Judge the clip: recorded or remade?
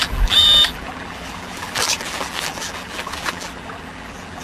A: remade